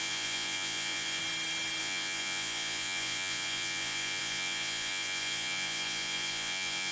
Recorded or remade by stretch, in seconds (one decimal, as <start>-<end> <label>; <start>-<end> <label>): 0.0-1.2 remade; 1.2-1.8 recorded; 1.8-6.9 remade